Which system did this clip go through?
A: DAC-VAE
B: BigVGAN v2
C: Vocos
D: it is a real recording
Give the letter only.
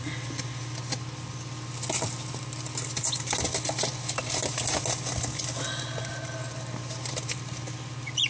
D